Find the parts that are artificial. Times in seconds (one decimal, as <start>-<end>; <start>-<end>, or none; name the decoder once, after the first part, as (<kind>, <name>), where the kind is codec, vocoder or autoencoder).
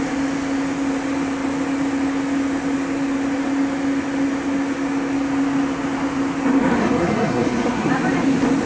6.8-7.9 (codec, SNAC)